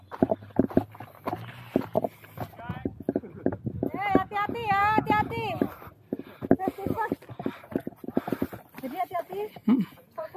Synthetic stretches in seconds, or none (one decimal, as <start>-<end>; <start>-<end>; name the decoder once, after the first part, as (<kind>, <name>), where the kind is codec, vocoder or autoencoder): 9.6-10.4 (vocoder, Vocos)